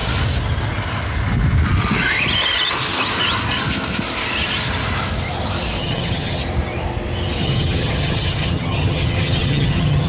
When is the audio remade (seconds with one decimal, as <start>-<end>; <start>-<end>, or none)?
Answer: 5.8-6.4; 7.4-10.1